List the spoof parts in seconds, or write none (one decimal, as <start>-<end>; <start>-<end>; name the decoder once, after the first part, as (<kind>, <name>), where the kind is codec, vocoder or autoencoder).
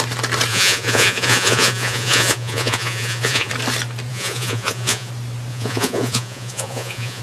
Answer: 0.5-3.5 (vocoder, Vocos); 4.1-5.1; 5.5-7.2